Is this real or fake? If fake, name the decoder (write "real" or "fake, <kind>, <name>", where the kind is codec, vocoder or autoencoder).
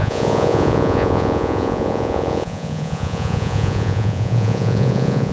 fake, vocoder, Vocos